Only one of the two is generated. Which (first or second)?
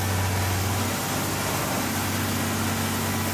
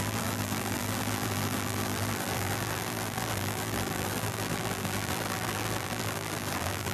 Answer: second